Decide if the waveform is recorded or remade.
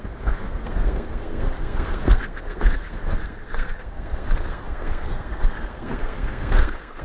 remade